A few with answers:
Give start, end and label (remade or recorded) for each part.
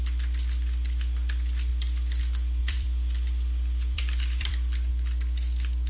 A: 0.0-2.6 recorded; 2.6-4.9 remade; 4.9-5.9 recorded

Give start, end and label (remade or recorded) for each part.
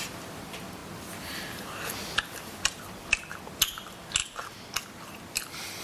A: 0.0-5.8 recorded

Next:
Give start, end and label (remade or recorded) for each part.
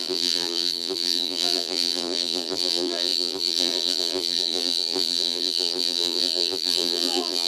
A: 0.0-7.5 remade